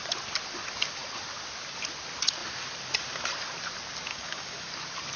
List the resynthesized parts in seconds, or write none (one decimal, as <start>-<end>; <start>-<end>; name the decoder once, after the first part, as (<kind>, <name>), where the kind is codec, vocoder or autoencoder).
4.1-4.7 (codec, DAC)